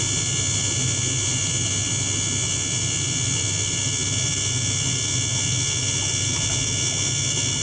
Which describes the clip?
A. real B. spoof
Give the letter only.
A